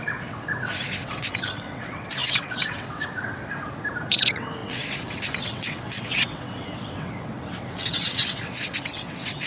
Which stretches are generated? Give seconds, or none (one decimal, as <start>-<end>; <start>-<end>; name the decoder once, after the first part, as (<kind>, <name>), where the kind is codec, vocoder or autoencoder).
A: 0.0-3.5 (vocoder, WaveNeXt); 4.0-9.5